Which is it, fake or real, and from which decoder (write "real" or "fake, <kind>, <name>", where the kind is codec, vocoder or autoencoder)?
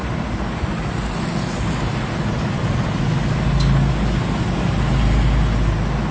real